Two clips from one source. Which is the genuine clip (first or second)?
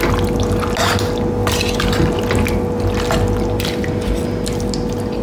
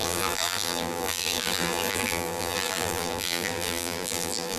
first